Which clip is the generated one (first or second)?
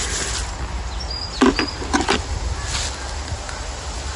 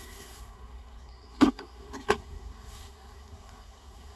second